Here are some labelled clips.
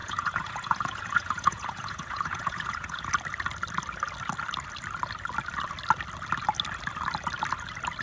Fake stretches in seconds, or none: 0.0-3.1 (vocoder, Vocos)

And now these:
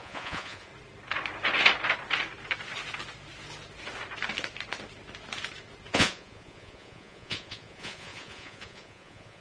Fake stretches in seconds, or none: 0.0-0.7 (vocoder, Vocos); 5.9-9.4